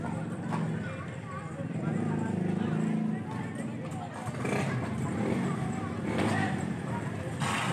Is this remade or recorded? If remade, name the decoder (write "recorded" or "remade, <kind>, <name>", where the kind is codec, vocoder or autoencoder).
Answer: recorded